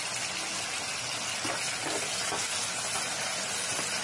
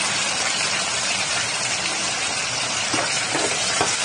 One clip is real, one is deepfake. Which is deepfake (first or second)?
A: second